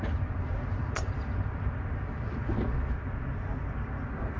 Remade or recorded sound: recorded